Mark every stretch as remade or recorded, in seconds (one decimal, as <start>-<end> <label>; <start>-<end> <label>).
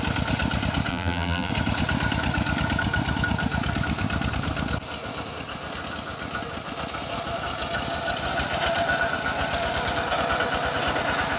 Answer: 0.0-0.9 recorded; 0.9-1.5 remade; 1.5-11.4 recorded